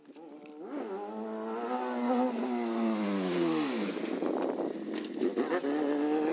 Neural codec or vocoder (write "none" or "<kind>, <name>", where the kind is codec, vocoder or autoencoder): none